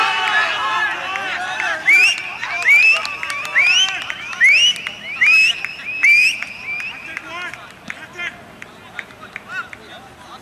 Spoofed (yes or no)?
no